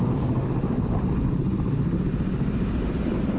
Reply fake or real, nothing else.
real